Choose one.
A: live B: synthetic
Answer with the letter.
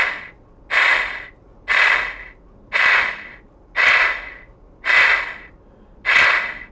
A